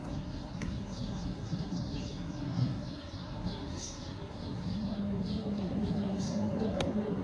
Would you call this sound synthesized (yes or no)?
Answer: yes